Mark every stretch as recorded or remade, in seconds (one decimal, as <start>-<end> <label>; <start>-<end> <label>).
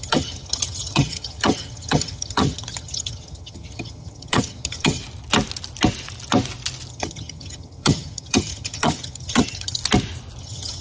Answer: 0.0-5.0 remade; 5.0-6.9 recorded; 6.9-9.8 remade; 9.8-10.4 recorded; 10.4-10.8 remade